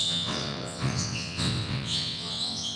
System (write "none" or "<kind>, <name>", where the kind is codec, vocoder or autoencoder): vocoder, WaveNeXt